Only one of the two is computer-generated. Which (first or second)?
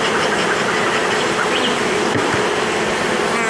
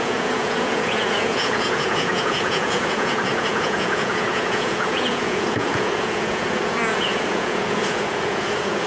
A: second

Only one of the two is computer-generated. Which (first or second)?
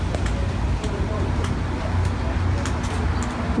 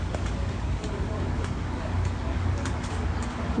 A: second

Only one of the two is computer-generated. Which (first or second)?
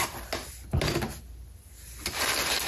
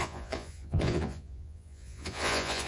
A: second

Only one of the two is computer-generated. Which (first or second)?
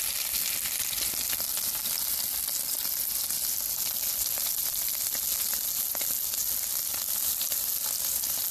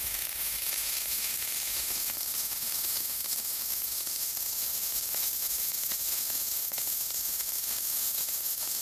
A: second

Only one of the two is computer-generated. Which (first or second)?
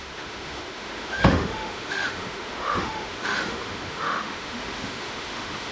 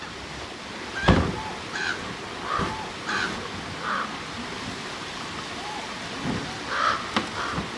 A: first